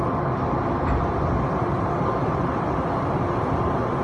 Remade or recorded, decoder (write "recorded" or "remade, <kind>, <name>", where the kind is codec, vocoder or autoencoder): recorded